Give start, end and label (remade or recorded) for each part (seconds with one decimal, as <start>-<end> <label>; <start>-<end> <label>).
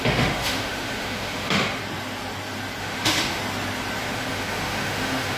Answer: 0.0-1.8 remade; 1.8-2.8 recorded; 2.8-3.4 remade; 3.4-4.0 recorded; 4.0-5.4 remade